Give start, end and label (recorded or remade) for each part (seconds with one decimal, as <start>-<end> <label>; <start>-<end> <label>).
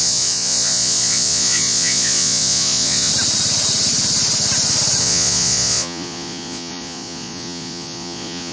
0.0-3.1 remade; 3.1-5.0 recorded; 5.0-8.5 remade